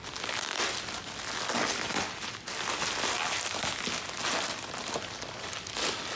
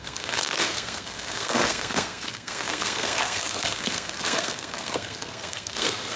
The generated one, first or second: second